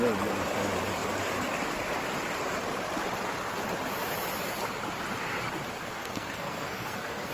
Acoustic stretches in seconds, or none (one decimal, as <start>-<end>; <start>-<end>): 0.0-6.0